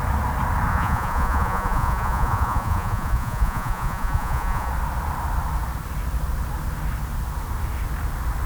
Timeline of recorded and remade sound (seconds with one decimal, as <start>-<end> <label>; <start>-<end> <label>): 0.0-0.7 recorded; 0.7-4.7 remade; 4.7-8.5 recorded